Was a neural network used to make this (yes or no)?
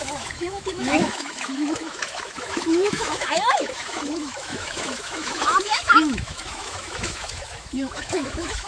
yes